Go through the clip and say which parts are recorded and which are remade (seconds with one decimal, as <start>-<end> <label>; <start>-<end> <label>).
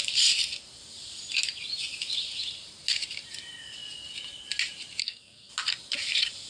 0.0-5.0 recorded; 5.0-5.5 remade; 5.5-6.5 recorded